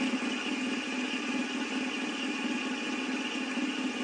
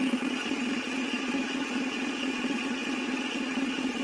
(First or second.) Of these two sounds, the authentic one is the first